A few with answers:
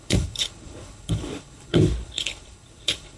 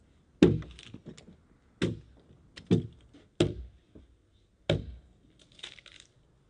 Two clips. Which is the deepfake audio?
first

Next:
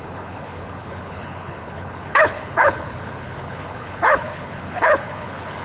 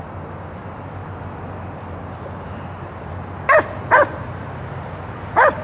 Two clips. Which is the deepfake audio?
first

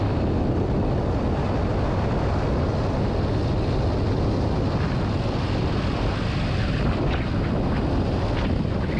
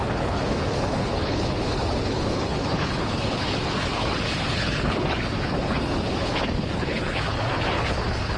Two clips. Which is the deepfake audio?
second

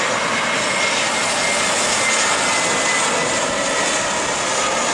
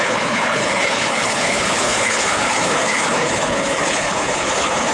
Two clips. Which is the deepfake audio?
second